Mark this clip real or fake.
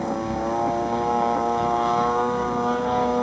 fake